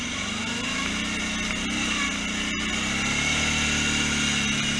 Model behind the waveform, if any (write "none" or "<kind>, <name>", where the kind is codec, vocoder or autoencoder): none